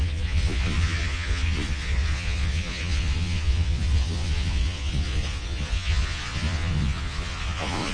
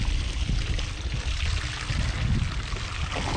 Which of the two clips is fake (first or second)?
first